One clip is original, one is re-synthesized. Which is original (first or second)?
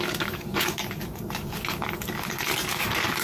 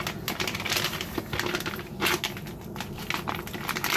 second